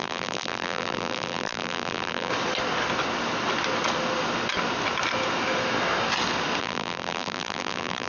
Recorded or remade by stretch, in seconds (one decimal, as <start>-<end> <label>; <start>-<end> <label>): 0.0-2.3 remade; 2.3-6.6 recorded; 6.6-8.1 remade